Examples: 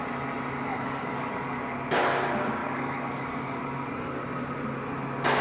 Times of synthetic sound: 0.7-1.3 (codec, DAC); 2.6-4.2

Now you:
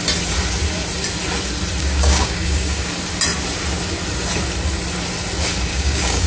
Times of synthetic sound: 1.8-2.9 (codec, DAC); 5.7-6.3

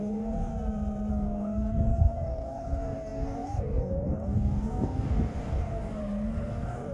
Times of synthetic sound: 0.0-0.5 (codec, DAC); 1.1-6.0; 6.5-6.9

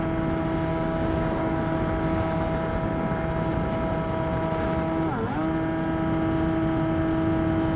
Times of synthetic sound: 0.7-1.6 (codec, DAC)

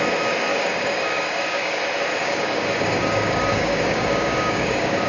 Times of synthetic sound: 0.5-1.8 (codec, DAC); 2.2-5.1